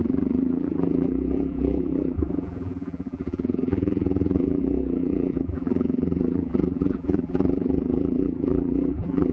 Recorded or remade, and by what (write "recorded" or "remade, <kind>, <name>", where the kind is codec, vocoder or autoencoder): remade, vocoder, BigVGAN v2